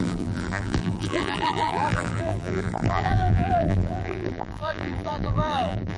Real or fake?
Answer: fake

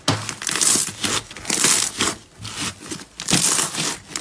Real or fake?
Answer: real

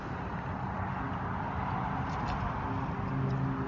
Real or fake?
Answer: real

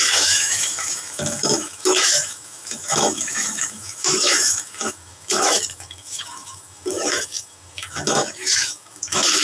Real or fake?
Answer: fake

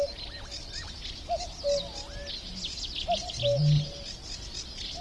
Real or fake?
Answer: real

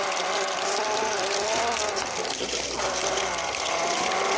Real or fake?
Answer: fake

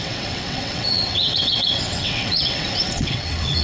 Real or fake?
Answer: fake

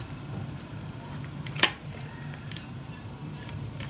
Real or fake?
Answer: fake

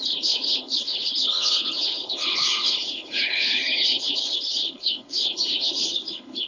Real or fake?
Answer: fake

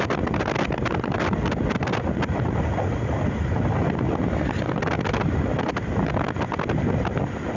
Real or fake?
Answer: real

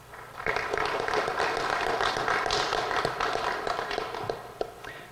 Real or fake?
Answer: real